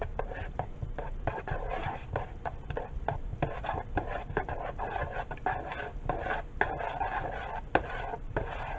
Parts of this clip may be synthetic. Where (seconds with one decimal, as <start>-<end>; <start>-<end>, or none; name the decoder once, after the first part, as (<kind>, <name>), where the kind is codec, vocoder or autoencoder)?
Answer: 0.0-5.0 (vocoder, BigVGAN v2); 7.7-8.8